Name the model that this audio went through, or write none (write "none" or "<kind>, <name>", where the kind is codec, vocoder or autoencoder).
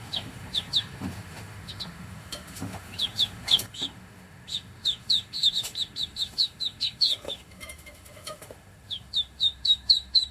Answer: autoencoder, DAC-VAE